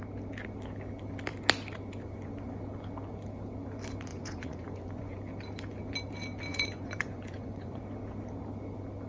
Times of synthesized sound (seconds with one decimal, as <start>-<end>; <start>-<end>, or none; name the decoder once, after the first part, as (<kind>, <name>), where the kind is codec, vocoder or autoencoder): 4.1-5.2 (vocoder, Vocos); 6.5-7.8